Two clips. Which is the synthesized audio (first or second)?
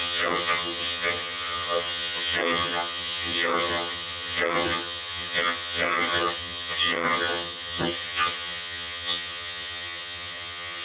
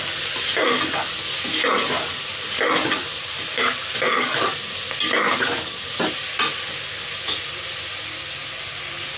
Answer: first